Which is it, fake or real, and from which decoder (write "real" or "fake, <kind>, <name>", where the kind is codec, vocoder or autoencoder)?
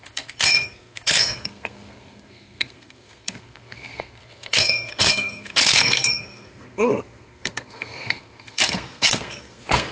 fake, codec, SNAC